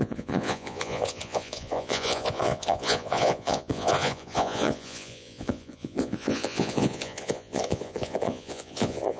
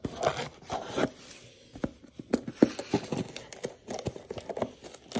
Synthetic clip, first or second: first